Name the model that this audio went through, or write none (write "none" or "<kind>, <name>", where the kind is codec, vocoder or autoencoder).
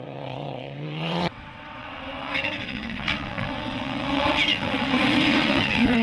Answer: vocoder, WaveNeXt